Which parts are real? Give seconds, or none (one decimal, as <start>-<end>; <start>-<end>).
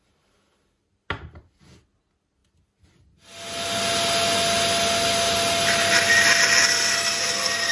0.0-7.7